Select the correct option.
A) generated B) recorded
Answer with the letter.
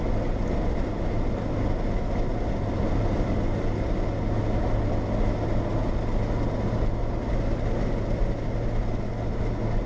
B